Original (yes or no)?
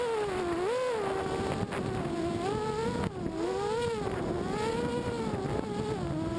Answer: yes